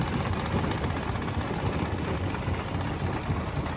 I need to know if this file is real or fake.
real